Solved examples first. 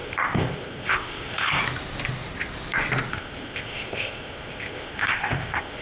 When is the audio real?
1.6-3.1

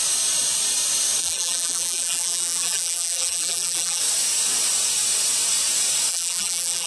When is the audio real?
0.0-1.2; 4.0-6.1

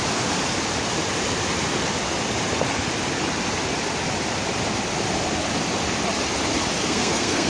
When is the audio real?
0.0-6.8

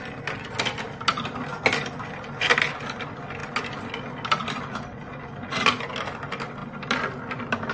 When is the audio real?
0.0-7.7

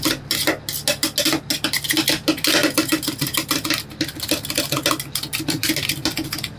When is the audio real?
0.0-6.6